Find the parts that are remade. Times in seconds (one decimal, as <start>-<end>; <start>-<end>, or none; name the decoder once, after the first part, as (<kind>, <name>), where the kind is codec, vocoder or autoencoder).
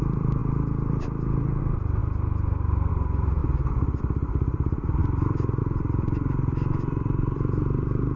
0.0-2.0 (vocoder, BigVGAN v2); 2.9-3.4; 4.0-8.2